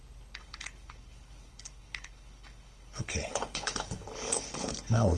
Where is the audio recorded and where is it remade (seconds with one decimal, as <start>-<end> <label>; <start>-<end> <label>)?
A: 0.0-5.2 remade